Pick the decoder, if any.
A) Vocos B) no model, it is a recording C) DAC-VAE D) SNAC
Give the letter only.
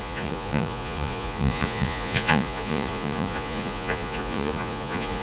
A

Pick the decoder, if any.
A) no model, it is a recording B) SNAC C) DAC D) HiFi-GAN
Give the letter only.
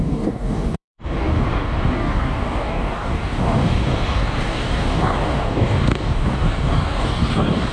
C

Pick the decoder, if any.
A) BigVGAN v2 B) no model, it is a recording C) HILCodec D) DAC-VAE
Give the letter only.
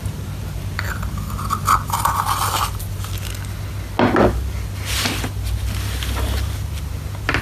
B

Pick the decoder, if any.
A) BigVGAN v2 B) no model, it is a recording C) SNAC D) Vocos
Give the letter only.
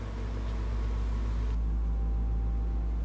B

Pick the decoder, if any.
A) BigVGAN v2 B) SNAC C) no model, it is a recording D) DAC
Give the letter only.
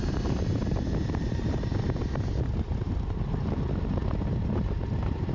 A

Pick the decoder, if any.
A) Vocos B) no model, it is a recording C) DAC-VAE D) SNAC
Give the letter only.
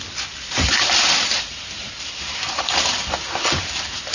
B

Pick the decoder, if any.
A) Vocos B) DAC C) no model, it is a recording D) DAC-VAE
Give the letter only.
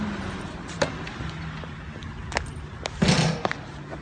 C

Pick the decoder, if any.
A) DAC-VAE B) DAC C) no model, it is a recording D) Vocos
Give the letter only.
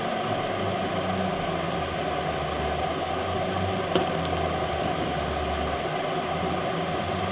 C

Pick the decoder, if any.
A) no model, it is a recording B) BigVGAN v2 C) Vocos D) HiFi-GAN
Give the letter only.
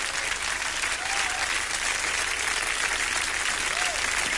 A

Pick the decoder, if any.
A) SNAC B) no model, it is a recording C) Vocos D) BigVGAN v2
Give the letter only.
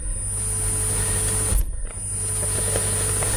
B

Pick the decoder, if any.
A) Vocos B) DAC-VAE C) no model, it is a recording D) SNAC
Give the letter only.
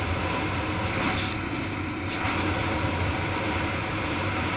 C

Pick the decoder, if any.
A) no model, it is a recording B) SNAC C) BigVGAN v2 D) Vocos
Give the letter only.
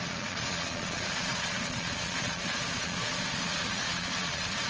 D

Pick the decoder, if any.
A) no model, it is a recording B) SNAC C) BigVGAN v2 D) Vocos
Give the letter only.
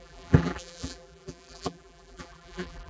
C